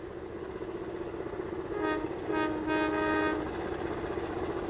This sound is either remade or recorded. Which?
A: recorded